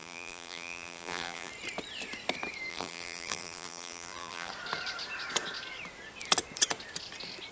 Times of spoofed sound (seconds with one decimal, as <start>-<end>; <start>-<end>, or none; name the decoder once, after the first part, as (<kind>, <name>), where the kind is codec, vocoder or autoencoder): 0.0-1.5 (vocoder, BigVGAN v2); 2.7-4.5